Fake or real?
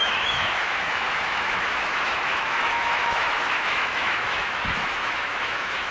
fake